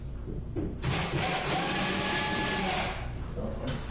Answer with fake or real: real